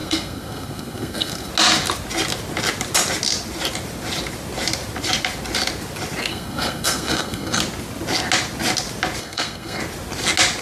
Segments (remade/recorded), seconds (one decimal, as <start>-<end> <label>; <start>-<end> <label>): 0.0-1.5 remade; 1.5-6.3 recorded; 6.3-7.6 remade; 7.6-9.2 recorded; 9.2-9.8 remade; 9.8-10.6 recorded